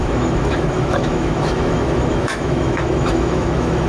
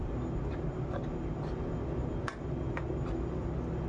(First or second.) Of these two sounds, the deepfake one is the first